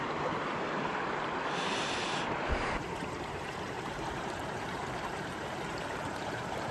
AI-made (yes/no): yes